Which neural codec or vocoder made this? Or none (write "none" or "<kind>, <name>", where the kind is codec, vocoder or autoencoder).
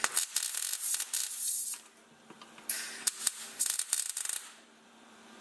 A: vocoder, BigVGAN v2